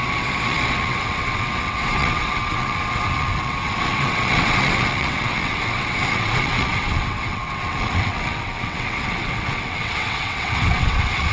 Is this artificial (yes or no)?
yes